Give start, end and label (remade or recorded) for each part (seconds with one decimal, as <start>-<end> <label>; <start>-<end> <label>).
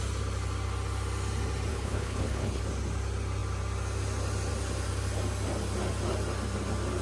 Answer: 0.0-1.7 recorded; 1.7-2.6 remade; 2.6-7.0 recorded